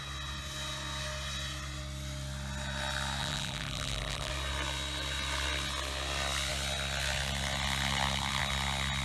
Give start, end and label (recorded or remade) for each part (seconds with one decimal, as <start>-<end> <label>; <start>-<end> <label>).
0.0-3.2 recorded; 3.2-4.3 remade; 4.3-9.0 recorded